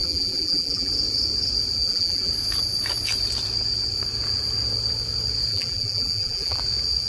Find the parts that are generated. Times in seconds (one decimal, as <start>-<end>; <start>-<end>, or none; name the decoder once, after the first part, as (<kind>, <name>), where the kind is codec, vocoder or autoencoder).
0.0-0.9 (vocoder, BigVGAN v2); 1.8-2.3; 5.5-6.6